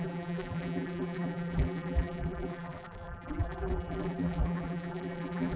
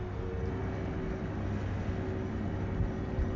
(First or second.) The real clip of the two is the second